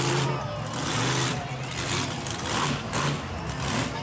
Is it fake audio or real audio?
real